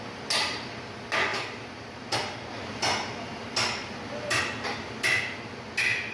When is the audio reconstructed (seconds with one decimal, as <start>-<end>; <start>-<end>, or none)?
none